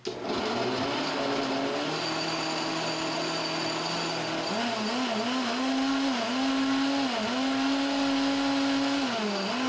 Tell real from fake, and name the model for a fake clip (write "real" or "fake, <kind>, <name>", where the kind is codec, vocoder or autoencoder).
real